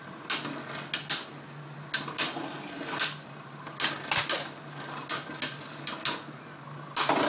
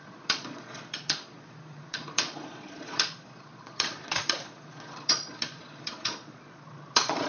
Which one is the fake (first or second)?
second